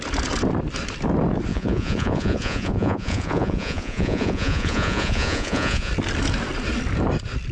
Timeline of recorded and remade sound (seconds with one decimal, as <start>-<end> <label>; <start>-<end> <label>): 0.0-1.5 recorded; 1.5-5.9 remade; 5.9-7.5 recorded